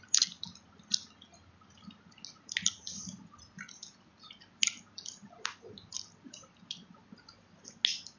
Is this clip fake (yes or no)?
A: no